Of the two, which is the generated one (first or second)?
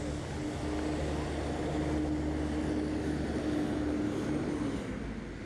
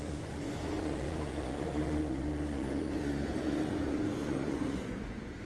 second